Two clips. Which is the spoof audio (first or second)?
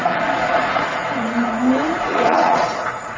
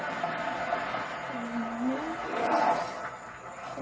first